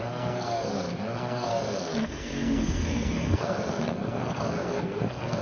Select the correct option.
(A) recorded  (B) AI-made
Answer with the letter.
B